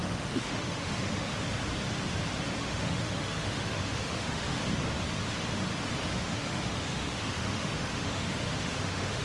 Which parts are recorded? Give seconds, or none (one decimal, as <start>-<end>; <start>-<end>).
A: 1.3-2.6; 4.6-6.0